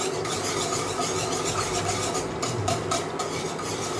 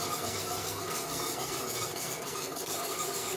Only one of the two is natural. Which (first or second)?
first